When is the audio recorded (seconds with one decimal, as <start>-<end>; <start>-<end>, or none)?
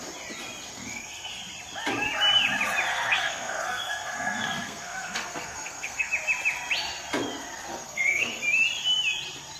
0.0-0.7; 1.3-2.9; 6.1-7.7; 8.4-9.6